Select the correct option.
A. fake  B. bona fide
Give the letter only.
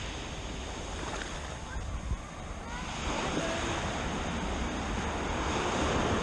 B